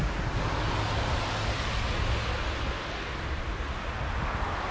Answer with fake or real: real